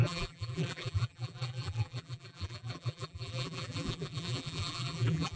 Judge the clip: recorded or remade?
remade